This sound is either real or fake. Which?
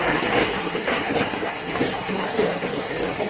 fake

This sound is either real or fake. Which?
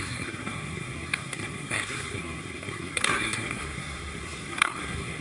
fake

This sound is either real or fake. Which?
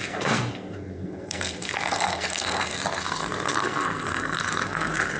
fake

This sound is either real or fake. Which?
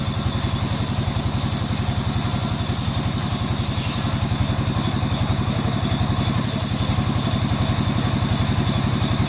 real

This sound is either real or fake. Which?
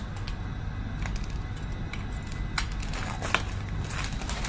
real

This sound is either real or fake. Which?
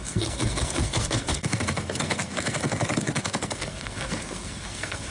fake